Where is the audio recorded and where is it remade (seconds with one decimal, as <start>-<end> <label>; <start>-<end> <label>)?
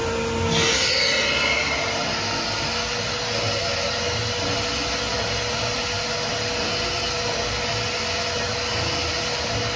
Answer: 0.0-9.8 recorded